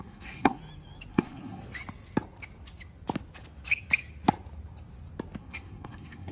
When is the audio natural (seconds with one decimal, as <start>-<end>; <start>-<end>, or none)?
0.6-1.1; 1.6-5.4